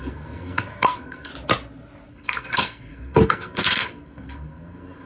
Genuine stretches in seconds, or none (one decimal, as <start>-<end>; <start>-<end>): 1.3-2.1